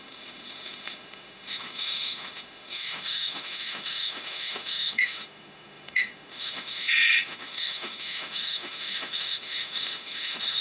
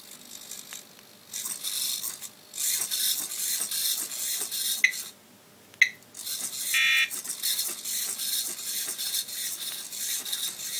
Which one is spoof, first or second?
first